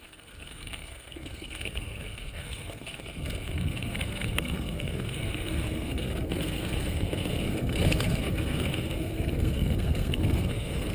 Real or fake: fake